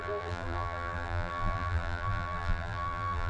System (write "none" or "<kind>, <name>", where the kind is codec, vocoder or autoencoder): vocoder, BigVGAN v2